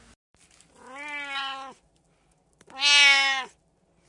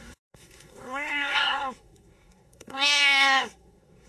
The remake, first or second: second